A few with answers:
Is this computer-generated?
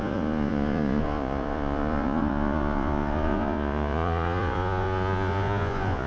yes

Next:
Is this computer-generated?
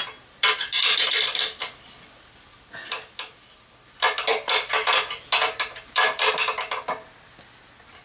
no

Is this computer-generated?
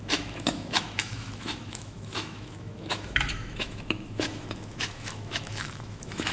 yes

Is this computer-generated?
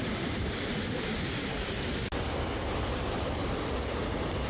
no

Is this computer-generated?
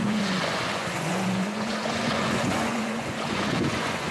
yes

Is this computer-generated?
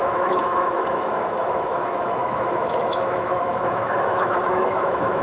yes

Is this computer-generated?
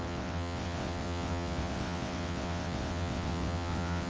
yes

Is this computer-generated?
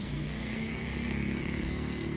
yes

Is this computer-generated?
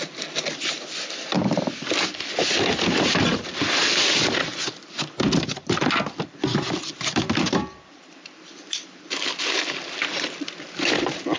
yes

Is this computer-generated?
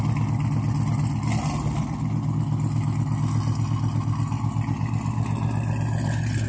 no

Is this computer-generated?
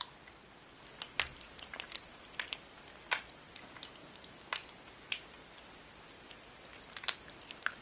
no